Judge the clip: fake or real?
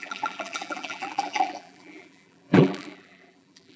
fake